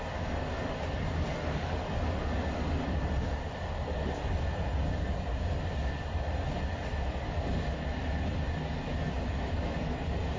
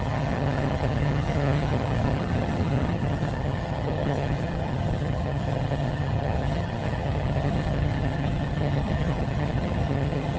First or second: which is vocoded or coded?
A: second